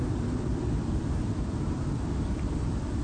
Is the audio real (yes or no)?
yes